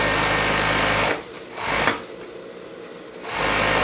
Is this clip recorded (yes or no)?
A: yes